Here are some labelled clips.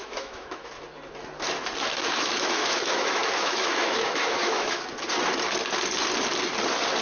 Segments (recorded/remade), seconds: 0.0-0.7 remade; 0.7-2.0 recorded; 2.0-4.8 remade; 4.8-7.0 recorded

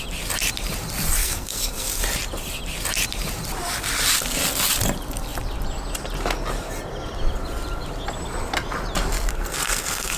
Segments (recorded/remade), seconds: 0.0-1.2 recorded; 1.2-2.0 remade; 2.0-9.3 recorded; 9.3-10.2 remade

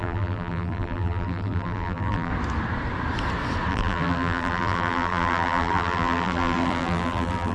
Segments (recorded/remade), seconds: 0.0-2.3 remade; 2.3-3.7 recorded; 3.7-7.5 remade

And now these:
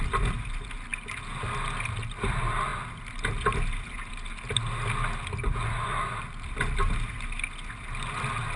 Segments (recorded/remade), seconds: 0.0-8.6 recorded